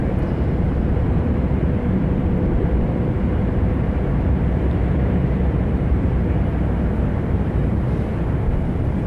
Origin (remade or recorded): remade